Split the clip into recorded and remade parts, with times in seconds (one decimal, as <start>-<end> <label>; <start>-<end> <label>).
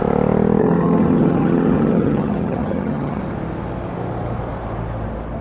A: 0.0-0.6 recorded; 0.6-3.2 remade; 3.2-5.4 recorded